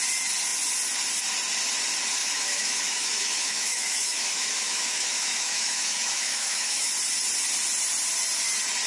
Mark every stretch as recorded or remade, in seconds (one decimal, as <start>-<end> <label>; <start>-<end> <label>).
0.0-2.2 recorded; 2.2-6.9 remade; 6.9-8.9 recorded